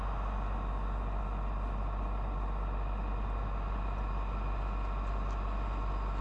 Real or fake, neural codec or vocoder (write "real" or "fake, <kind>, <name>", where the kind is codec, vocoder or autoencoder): real